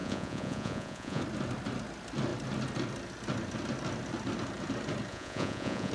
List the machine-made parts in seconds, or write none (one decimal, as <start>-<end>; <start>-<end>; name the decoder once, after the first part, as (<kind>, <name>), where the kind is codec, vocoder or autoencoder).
0.0-1.2 (vocoder, Vocos); 5.1-5.9